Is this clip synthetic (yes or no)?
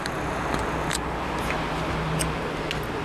no